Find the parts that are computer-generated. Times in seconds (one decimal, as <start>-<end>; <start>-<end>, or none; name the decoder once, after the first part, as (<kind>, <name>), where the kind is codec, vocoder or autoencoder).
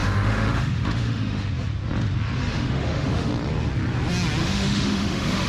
0.0-1.5 (autoencoder, DAC-VAE); 2.4-3.3; 4.4-5.5